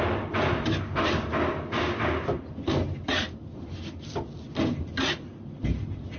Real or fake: real